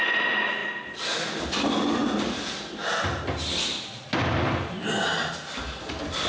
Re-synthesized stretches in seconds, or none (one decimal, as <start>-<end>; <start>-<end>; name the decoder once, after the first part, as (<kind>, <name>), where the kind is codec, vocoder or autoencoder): none